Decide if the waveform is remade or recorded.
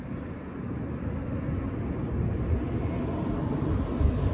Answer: recorded